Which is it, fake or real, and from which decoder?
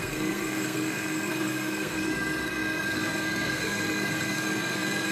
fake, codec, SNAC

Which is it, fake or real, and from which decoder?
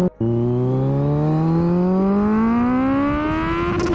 real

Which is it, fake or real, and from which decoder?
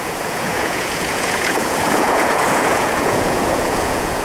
fake, vocoder, Vocos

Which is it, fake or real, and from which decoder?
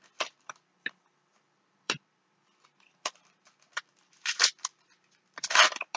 fake, vocoder, BigVGAN v2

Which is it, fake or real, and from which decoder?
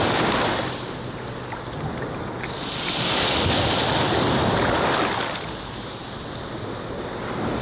real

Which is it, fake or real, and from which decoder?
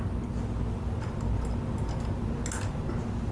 real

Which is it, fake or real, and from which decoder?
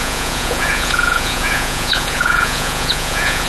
fake, vocoder, Vocos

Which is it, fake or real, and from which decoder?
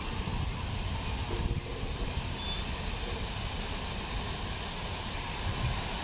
real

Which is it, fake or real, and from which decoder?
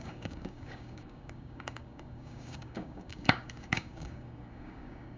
fake, codec, DAC